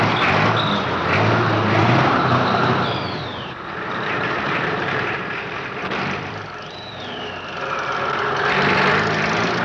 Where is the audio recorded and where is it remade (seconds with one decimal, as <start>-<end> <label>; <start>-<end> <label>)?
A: 0.0-1.8 recorded; 1.8-6.3 remade; 6.3-9.6 recorded